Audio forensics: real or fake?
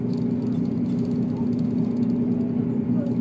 real